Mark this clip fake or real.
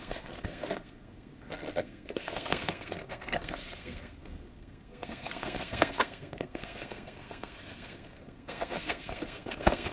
fake